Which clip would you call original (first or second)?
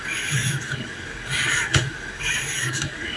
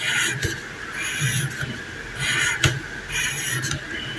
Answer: second